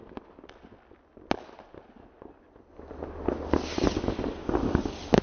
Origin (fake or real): real